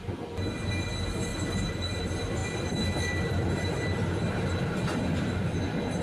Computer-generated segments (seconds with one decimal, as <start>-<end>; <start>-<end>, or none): none